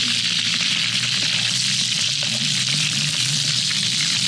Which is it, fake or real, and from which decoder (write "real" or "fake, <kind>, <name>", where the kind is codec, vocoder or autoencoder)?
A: real